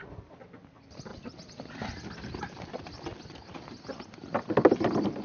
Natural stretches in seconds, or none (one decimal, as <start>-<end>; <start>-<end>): 0.0-5.2